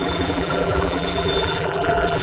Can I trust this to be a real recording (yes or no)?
no